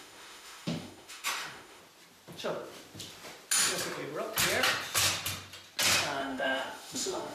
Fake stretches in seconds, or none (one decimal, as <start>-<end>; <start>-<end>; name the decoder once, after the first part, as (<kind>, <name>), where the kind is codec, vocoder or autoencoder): 0.0-1.8 (autoencoder, DAC-VAE); 6.2-7.3